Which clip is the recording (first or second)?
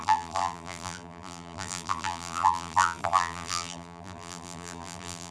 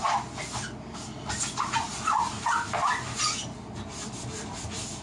second